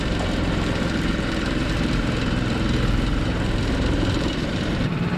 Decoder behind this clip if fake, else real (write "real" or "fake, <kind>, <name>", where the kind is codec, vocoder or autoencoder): fake, vocoder, BigVGAN v2